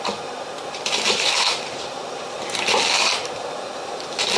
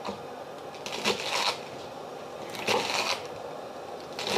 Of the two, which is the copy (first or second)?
first